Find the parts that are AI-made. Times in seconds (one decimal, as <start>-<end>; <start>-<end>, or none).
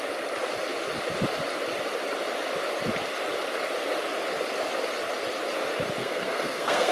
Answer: 6.0-6.9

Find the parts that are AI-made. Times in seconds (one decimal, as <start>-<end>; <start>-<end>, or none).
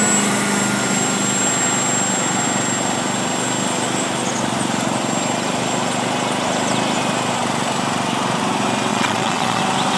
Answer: 8.9-9.6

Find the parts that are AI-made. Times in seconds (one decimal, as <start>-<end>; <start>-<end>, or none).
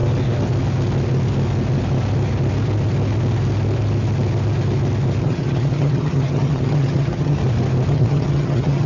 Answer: 5.2-7.4; 7.9-8.9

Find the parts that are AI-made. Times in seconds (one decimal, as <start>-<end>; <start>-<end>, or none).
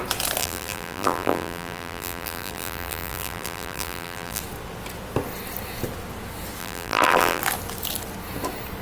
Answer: 0.4-4.4; 6.6-7.4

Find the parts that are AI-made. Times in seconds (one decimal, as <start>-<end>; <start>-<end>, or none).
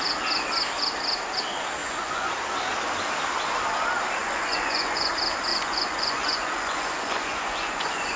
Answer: 1.8-2.3; 4.2-5.1; 5.5-8.2